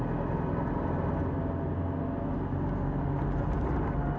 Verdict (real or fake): real